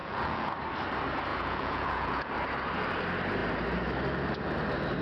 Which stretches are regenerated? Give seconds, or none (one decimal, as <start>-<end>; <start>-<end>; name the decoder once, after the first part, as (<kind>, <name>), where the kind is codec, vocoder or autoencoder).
0.0-0.5 (vocoder, Vocos); 1.3-2.3